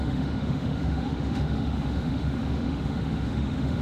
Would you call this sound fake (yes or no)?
yes